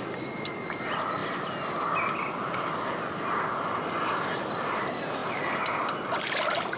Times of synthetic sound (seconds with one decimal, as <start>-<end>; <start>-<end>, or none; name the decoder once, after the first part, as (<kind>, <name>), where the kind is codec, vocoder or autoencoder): none